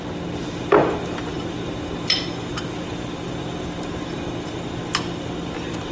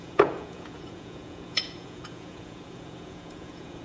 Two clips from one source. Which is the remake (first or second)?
second